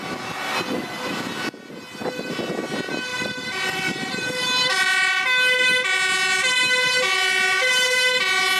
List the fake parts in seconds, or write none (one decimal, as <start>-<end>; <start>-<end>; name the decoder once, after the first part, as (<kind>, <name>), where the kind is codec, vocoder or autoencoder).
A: 3.1-5.2 (vocoder, BigVGAN v2)